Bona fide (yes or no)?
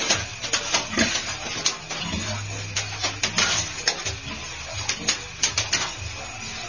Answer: yes